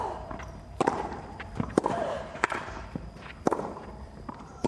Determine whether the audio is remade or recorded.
remade